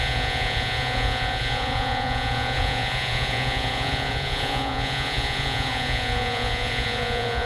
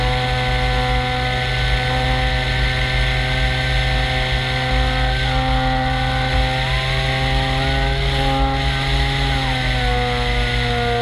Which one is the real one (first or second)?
second